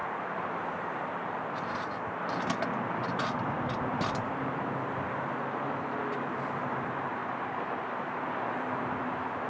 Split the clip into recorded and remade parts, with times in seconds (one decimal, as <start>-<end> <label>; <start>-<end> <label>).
0.0-7.2 remade; 7.2-8.0 recorded; 8.0-9.5 remade